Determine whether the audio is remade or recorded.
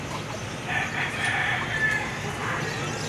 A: recorded